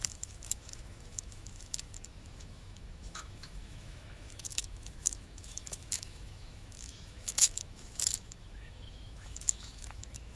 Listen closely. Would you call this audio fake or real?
fake